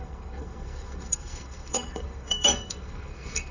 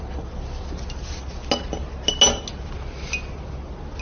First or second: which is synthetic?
first